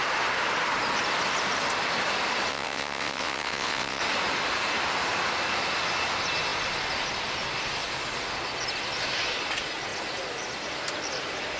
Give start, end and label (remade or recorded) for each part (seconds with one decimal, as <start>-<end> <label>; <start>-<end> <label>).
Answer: 0.0-2.5 recorded; 2.5-4.0 remade; 4.0-11.6 recorded